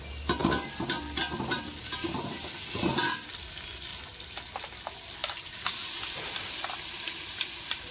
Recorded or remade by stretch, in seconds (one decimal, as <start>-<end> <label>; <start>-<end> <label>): 0.0-7.9 recorded